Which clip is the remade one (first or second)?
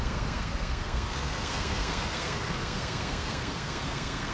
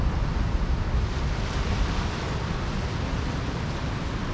first